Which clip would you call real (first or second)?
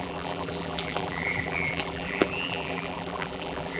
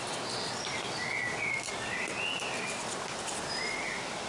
second